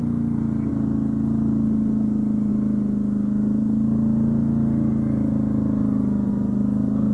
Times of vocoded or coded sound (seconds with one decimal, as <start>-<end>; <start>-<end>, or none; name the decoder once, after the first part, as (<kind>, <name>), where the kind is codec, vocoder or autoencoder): none